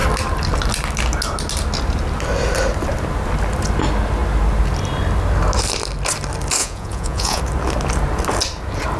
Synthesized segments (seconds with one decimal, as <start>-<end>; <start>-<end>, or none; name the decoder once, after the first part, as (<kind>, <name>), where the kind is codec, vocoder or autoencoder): 6.6-7.4 (vocoder, Vocos)